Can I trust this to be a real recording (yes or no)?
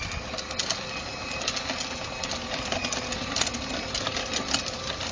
yes